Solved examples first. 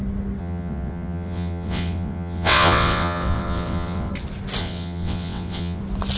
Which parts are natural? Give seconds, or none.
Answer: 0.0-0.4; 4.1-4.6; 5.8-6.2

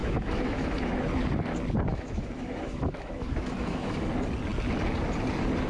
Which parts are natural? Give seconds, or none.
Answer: 0.9-1.9; 4.1-5.7

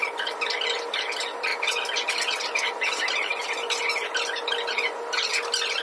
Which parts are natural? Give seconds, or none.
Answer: 0.0-5.8

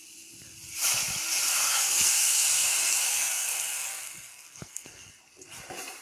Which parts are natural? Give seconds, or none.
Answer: 0.0-1.5; 5.1-6.0

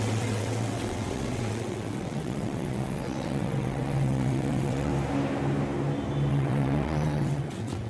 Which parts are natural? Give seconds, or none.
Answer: 4.9-6.3

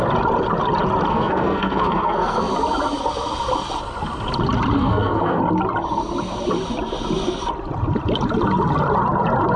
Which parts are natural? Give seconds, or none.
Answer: 0.0-1.1; 2.5-4.8; 5.4-9.6